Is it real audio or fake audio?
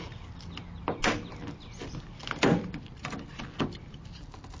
real